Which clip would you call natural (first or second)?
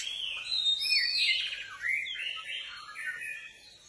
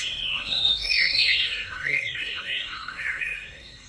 first